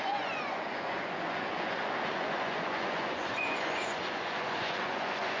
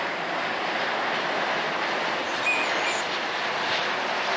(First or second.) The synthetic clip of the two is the first